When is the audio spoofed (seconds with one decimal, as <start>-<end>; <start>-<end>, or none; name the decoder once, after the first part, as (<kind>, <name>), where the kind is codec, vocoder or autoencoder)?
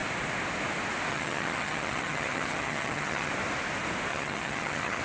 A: 1.1-3.3 (vocoder, HiFi-GAN); 4.1-5.0